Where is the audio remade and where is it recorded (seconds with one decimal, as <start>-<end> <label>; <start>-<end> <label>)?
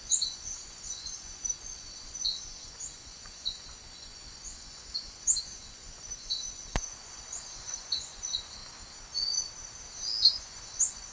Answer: 0.0-8.6 remade; 8.6-10.3 recorded; 10.3-11.1 remade